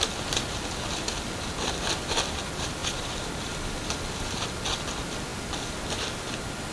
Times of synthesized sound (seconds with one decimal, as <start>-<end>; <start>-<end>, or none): none